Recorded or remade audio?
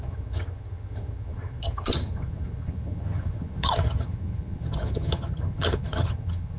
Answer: remade